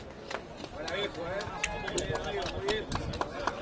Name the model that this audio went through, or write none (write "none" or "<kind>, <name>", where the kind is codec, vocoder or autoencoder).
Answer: none